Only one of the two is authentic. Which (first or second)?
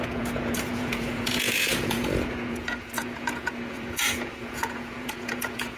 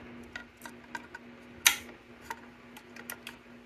second